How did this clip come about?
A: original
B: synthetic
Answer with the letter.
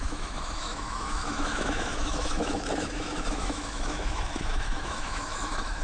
B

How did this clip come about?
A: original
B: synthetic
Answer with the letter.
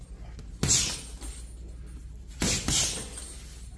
A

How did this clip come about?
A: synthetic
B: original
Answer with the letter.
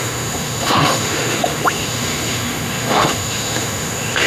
A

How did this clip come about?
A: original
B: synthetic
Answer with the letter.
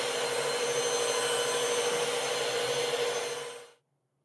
A